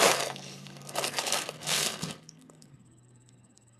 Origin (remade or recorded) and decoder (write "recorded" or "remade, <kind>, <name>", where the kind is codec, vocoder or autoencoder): remade, codec, SNAC